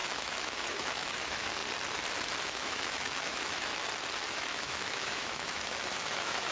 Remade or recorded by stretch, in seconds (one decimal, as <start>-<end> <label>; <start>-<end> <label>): 0.0-1.6 remade; 1.6-2.4 recorded; 2.4-3.7 remade; 3.7-4.3 recorded; 4.3-6.5 remade